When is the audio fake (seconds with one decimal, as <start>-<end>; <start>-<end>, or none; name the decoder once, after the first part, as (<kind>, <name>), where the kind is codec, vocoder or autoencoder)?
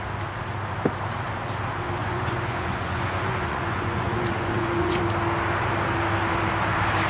2.0-5.0 (vocoder, Vocos)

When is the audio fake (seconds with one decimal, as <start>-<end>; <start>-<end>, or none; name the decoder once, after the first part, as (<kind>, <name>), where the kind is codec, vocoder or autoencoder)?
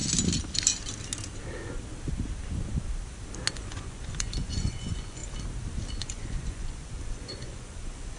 3.5-5.2 (vocoder, Vocos); 5.9-8.2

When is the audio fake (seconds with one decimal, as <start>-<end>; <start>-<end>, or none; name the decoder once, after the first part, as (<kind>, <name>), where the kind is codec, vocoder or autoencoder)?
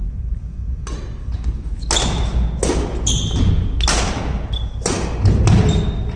none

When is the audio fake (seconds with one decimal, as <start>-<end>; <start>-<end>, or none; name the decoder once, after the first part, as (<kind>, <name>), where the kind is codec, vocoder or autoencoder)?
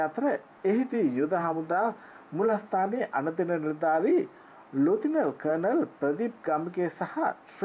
0.5-3.0 (vocoder, Vocos)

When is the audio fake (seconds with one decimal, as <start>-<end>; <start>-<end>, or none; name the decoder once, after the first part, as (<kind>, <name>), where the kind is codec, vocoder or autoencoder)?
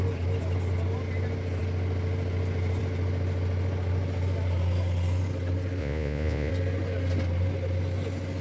5.8-6.5 (vocoder, Vocos)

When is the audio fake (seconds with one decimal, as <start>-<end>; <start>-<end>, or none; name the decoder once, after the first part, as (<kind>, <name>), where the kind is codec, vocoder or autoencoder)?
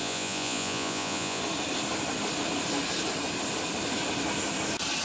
0.0-1.4 (vocoder, Vocos)